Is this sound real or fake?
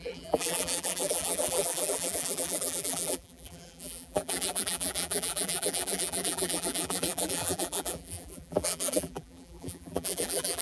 fake